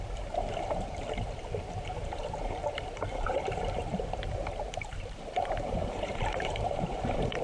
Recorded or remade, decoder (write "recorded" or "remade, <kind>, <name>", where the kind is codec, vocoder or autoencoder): remade, vocoder, BigVGAN v2